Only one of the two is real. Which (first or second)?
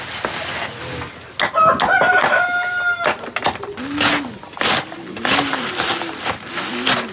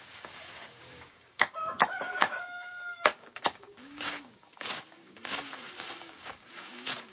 first